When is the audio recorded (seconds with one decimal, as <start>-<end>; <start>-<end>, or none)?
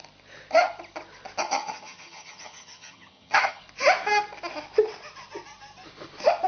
0.0-1.4; 3.6-6.5